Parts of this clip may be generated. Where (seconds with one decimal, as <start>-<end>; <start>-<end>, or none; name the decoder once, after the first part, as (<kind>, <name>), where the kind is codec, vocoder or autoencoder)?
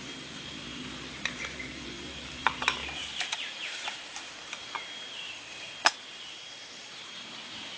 0.0-7.8 (vocoder, BigVGAN v2)